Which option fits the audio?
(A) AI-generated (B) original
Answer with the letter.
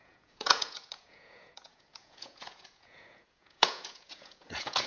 A